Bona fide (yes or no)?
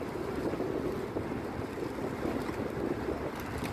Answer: yes